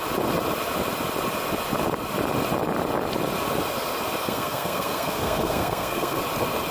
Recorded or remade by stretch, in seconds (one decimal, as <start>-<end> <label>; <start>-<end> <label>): 0.0-4.2 recorded; 4.2-6.2 remade; 6.2-6.7 recorded